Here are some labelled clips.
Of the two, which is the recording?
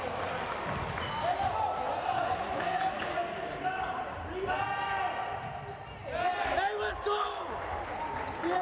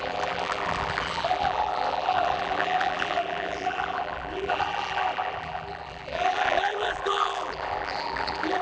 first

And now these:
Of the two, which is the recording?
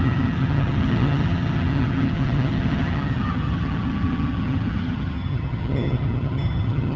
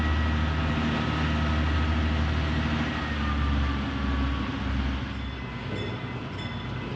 second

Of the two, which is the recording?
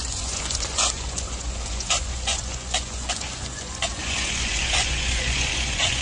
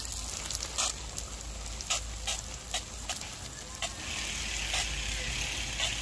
second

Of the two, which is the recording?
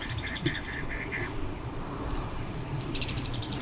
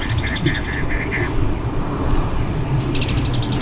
second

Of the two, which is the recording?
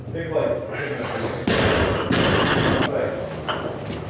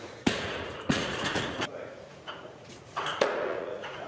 first